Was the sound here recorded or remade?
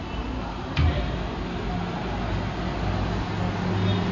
recorded